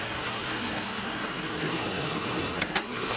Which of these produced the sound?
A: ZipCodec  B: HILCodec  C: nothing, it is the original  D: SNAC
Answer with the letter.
D